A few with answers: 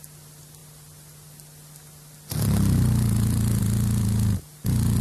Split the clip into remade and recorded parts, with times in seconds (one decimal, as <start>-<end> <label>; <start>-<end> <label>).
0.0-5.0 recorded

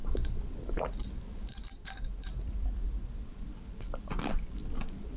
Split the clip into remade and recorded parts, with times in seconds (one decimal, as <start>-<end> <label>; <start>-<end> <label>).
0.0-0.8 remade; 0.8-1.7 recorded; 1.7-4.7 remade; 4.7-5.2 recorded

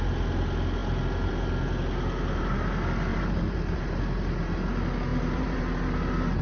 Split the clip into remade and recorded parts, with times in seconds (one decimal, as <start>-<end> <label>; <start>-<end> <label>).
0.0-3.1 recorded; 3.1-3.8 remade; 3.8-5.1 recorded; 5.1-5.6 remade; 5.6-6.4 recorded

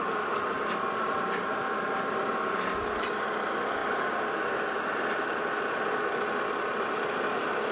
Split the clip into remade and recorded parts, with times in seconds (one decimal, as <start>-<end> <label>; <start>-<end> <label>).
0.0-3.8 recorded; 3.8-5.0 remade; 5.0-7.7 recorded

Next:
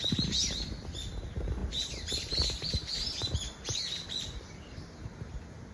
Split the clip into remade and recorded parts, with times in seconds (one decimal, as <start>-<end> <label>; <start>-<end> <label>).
0.0-1.6 recorded; 1.6-5.0 remade; 5.0-5.7 recorded

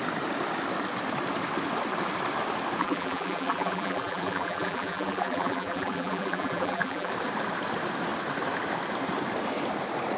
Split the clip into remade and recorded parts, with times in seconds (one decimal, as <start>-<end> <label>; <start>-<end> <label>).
0.0-2.8 recorded; 2.8-7.1 remade; 7.1-10.2 recorded